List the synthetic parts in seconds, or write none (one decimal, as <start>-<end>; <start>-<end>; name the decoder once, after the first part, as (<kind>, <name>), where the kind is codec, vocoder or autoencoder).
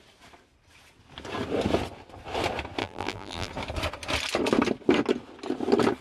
2.8-3.5 (vocoder, BigVGAN v2)